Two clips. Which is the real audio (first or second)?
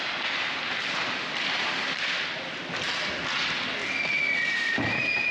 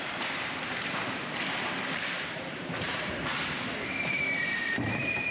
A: first